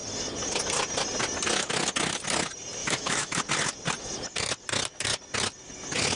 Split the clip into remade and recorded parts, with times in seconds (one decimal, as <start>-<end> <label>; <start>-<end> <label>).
0.0-2.8 recorded; 2.8-3.4 remade; 3.4-6.2 recorded

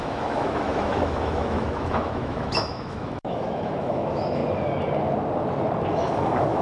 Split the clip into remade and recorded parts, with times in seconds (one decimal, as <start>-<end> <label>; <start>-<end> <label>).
0.0-4.4 remade; 4.4-5.9 recorded; 5.9-6.6 remade

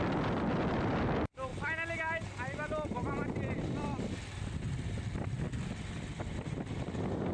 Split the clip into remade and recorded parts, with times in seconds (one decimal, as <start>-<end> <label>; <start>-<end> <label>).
0.0-7.3 recorded